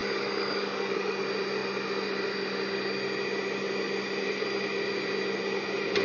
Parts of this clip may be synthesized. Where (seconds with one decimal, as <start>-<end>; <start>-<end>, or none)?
0.0-1.2